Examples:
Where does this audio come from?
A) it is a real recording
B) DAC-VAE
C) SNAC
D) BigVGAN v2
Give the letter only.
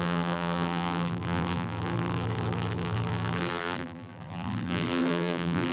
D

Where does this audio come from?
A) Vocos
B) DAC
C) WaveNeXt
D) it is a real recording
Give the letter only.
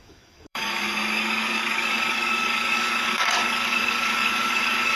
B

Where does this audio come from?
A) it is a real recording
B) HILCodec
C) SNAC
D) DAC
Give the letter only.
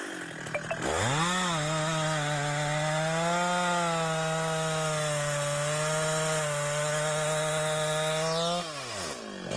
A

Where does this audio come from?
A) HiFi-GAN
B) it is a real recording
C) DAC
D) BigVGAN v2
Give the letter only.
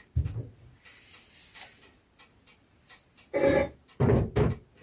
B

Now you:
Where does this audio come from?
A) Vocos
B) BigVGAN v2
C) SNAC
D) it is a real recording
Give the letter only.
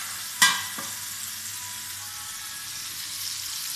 D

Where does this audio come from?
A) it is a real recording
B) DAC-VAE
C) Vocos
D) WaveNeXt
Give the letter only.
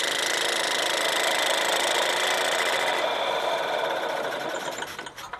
A